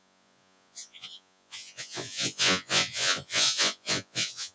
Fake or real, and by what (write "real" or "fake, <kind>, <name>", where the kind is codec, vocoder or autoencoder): fake, vocoder, Vocos